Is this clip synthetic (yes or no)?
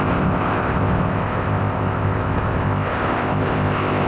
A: yes